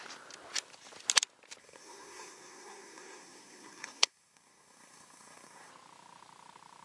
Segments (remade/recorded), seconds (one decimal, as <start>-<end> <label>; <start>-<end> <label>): 0.0-1.6 recorded; 1.6-5.7 remade; 5.7-6.8 recorded